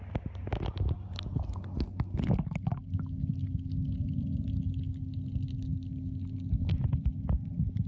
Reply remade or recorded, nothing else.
recorded